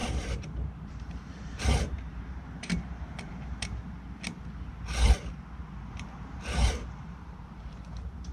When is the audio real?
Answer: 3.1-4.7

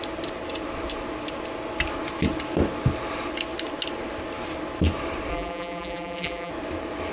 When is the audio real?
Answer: 0.0-5.3; 6.5-7.1